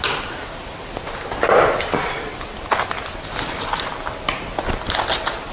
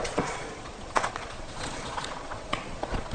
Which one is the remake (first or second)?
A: second